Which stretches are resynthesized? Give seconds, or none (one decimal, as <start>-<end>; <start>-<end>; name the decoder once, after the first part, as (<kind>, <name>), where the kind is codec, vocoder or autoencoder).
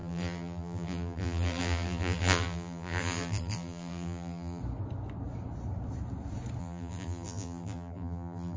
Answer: 0.0-4.6 (vocoder, BigVGAN v2); 6.6-8.6